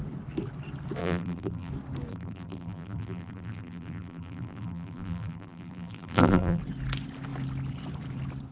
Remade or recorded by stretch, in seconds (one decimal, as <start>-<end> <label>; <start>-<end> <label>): 0.0-1.0 recorded; 1.0-1.7 remade; 1.7-2.1 recorded; 2.1-6.6 remade; 6.6-8.5 recorded